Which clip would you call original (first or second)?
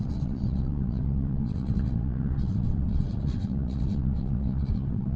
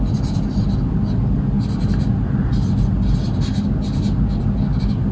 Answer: second